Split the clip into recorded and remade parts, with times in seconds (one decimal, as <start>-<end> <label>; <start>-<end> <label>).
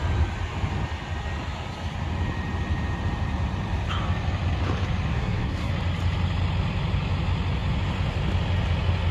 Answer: 0.0-5.1 recorded; 5.1-5.7 remade; 5.7-9.1 recorded